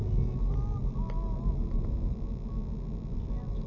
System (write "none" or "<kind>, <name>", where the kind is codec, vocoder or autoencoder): none